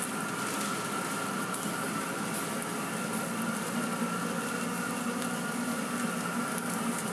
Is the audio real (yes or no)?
yes